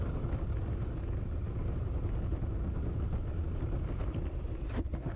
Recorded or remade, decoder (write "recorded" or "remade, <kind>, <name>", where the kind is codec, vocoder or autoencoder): recorded